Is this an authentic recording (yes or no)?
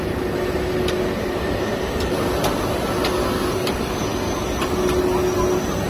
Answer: yes